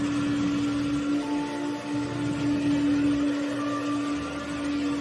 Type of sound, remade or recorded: recorded